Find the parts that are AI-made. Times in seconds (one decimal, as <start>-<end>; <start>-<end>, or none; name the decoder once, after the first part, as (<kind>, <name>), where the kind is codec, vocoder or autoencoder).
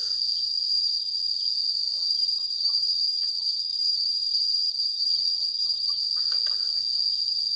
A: 0.7-1.3 (vocoder, HiFi-GAN); 2.0-6.0